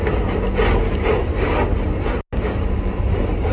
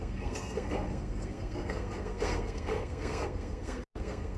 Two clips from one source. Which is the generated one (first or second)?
second